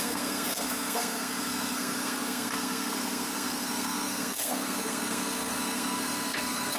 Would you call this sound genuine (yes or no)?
no